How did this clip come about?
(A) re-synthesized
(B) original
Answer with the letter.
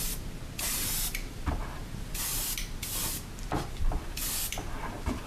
B